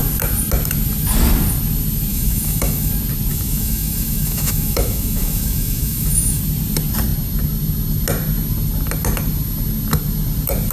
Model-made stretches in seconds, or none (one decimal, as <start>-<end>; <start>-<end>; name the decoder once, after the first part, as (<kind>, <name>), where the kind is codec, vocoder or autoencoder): 2.1-2.9 (autoencoder, DAC-VAE); 3.3-6.4

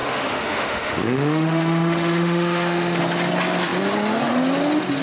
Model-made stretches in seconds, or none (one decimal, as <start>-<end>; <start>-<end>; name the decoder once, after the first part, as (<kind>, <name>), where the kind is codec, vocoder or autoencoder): 0.0-3.0 (autoencoder, DAC-VAE)

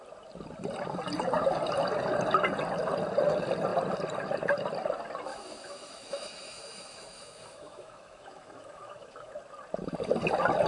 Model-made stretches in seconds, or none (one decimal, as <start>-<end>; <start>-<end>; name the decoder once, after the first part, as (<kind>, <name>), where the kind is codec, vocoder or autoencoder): 5.3-9.3 (autoencoder, DAC-VAE)

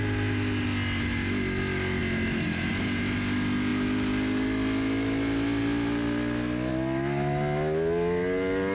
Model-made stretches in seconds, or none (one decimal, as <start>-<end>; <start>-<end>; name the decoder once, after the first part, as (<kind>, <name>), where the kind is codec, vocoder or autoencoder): none

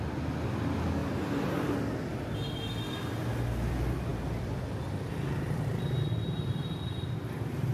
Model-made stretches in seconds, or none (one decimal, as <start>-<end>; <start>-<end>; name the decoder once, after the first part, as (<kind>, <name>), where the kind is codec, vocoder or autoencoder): none